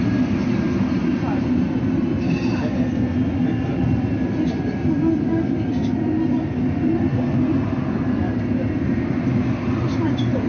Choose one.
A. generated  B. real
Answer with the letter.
B